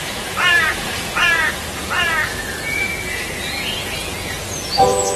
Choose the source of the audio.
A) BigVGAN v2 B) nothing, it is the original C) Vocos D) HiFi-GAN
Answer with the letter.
C